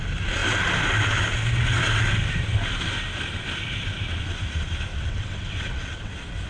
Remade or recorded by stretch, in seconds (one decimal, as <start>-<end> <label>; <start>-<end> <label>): 0.0-4.9 recorded; 4.9-6.1 remade; 6.1-6.5 recorded